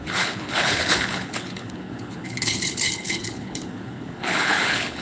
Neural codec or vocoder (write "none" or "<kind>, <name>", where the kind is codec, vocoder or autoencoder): codec, HILCodec